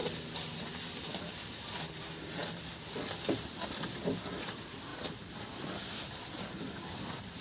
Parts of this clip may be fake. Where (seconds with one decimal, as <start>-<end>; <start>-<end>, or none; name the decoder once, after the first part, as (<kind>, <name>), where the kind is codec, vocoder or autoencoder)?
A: 0.0-1.1 (vocoder, BigVGAN v2)